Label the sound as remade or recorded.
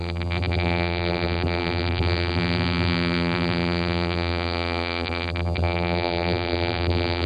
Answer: remade